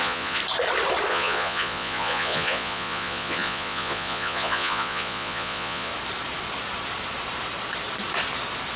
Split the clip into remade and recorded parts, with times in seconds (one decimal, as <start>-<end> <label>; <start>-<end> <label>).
0.0-0.4 remade; 0.4-1.1 recorded; 1.1-5.9 remade; 5.9-8.8 recorded